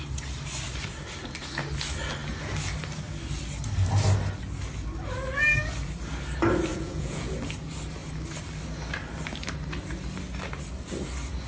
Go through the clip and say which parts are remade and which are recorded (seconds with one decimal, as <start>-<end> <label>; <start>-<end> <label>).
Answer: 0.0-6.7 recorded; 6.7-7.3 remade; 7.3-11.5 recorded